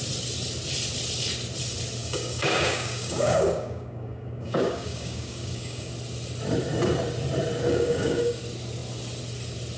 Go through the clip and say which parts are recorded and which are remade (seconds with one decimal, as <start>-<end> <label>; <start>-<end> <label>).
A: 0.0-2.0 recorded; 2.0-5.9 remade; 5.9-7.7 recorded; 7.7-8.4 remade; 8.4-9.8 recorded

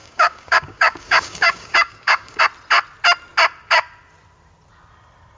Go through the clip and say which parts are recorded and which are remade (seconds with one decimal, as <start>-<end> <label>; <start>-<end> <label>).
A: 0.0-2.4 remade; 2.4-5.4 recorded

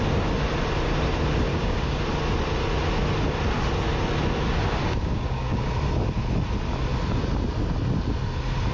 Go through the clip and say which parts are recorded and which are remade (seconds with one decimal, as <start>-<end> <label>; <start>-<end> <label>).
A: 0.0-1.5 recorded; 1.5-2.0 remade; 2.0-4.8 recorded; 4.8-5.6 remade; 5.6-8.7 recorded

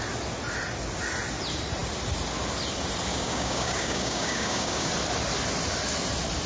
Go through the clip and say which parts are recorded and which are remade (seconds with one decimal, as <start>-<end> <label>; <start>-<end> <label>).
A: 0.0-3.1 recorded; 3.1-4.9 remade; 4.9-6.5 recorded

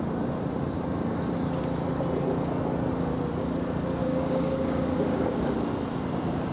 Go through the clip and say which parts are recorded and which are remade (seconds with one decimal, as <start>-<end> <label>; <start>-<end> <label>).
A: 0.0-4.0 recorded; 4.0-5.4 remade; 5.4-6.5 recorded